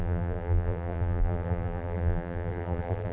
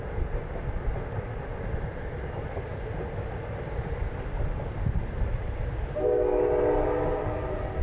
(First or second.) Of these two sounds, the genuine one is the second